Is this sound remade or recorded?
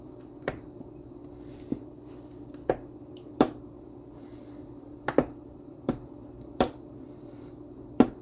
remade